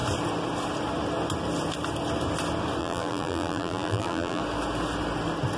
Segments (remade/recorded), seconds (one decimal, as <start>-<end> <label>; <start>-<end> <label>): 0.0-2.8 recorded; 2.8-4.4 remade; 4.4-5.6 recorded